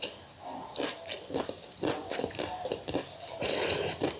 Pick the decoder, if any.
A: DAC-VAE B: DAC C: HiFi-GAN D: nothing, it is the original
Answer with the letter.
D